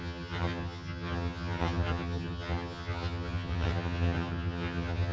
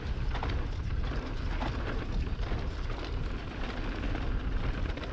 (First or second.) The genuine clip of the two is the second